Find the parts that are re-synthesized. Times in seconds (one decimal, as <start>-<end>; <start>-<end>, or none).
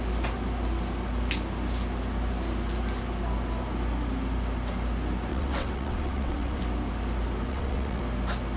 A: 5.3-6.6; 7.5-8.0